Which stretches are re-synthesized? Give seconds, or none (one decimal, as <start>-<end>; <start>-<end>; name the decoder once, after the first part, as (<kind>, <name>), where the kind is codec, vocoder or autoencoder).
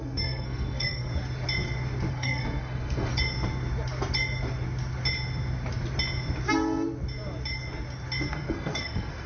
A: 0.0-1.1 (codec, SNAC); 2.1-3.1; 8.3-9.3